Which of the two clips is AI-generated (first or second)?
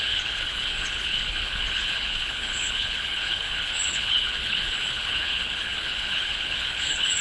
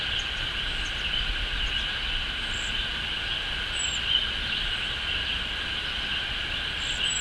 first